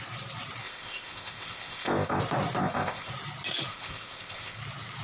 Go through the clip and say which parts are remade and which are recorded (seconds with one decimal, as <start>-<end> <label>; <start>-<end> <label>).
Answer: 0.0-0.6 recorded; 0.6-2.2 remade; 2.2-2.6 recorded; 2.6-3.1 remade; 3.1-3.7 recorded; 3.7-4.6 remade; 4.6-5.0 recorded